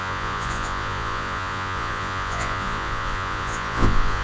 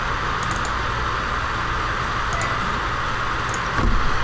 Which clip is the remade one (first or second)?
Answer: first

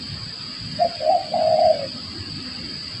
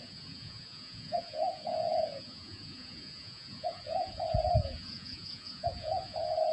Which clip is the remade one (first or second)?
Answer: second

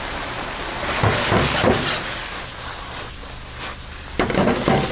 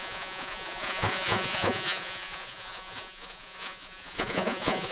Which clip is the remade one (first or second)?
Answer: second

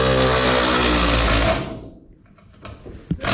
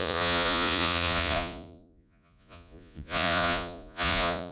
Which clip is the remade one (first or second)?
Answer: second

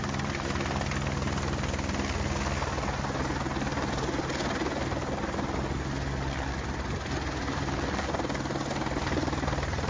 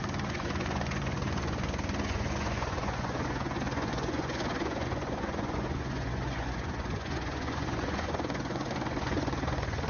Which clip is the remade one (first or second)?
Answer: second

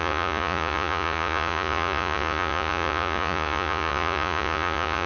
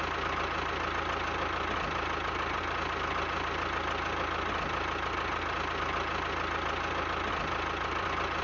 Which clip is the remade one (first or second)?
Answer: first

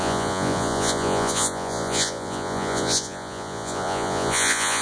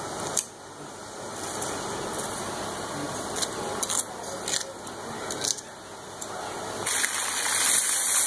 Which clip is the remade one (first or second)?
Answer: first